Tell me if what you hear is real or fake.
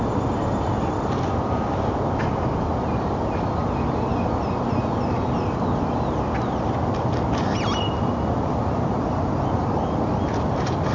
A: real